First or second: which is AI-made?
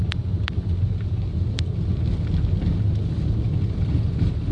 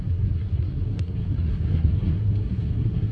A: second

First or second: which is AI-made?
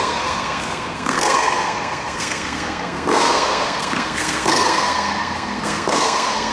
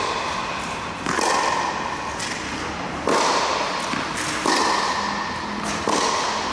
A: first